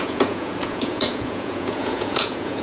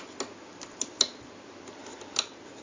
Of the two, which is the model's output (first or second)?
first